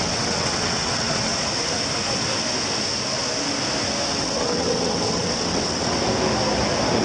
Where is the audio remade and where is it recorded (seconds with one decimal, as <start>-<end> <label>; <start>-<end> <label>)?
0.0-1.3 remade; 1.3-4.1 recorded; 4.1-6.0 remade; 6.0-7.0 recorded